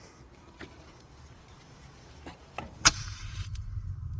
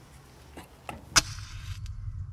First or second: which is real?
second